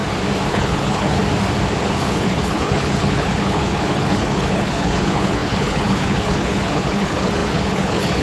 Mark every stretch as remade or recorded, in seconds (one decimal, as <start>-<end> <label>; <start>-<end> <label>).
0.0-0.5 recorded; 0.5-1.2 remade; 1.2-1.8 recorded; 1.8-8.2 remade